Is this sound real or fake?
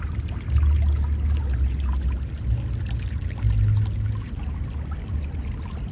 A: real